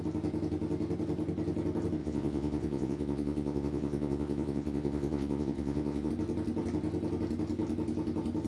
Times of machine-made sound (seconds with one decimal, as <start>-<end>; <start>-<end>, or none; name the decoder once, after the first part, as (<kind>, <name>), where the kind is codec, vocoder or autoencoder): 2.0-6.1 (vocoder, Vocos)